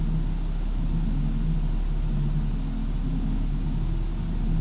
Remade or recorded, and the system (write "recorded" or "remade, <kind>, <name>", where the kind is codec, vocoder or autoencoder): recorded